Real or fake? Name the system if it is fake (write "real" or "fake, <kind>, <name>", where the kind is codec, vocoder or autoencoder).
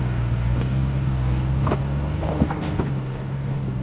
fake, codec, DAC